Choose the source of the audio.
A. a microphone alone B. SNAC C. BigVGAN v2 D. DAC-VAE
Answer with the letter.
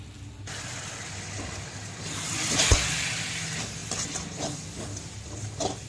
A